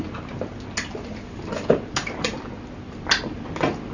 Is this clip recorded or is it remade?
recorded